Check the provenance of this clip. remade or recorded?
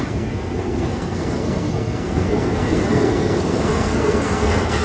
remade